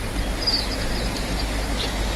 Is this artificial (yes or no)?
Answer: no